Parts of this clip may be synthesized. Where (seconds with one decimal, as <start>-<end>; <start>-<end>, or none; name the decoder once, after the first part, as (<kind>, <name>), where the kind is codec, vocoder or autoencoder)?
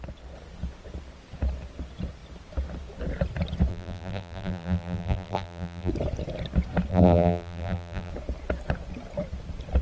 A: 3.7-5.9 (vocoder, BigVGAN v2); 6.9-8.1